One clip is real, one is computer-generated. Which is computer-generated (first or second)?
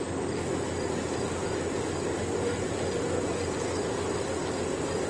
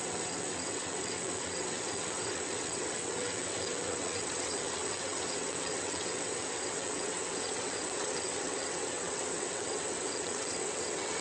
second